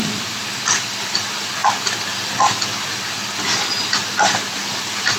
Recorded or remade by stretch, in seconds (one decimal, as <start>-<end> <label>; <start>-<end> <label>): 0.0-1.6 remade; 1.6-4.7 recorded; 4.7-5.2 remade